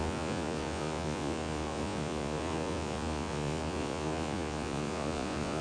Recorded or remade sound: remade